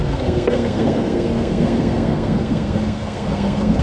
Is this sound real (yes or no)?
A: no